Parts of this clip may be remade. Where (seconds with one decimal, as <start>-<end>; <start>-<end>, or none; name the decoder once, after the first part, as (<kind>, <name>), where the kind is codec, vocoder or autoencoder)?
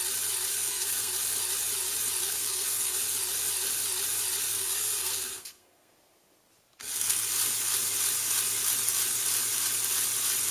0.5-1.1 (codec, SNAC); 2.2-3.0; 4.5-5.9; 6.8-7.3